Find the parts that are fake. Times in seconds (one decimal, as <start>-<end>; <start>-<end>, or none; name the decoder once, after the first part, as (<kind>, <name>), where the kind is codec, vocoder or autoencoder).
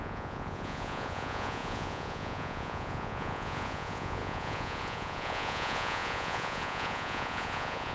0.0-7.9 (vocoder, Vocos)